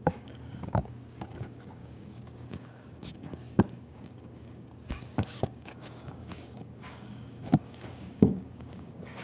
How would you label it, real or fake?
fake